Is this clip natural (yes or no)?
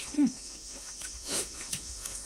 no